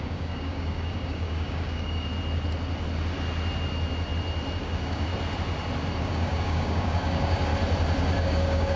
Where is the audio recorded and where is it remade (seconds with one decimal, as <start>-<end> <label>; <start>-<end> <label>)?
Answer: 0.0-2.1 remade; 2.1-4.6 recorded; 4.6-5.1 remade; 5.1-6.0 recorded; 6.0-7.5 remade; 7.5-8.2 recorded; 8.2-8.8 remade